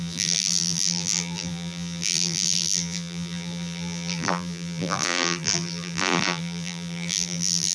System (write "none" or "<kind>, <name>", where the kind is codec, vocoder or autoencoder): vocoder, BigVGAN v2